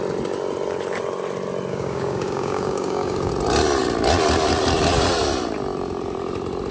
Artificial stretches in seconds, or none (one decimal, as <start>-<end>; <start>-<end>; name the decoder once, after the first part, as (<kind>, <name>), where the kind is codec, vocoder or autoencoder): 1.7-3.3 (codec, DAC)